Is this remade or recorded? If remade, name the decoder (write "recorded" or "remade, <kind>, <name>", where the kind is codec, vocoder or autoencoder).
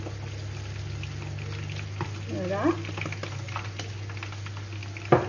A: recorded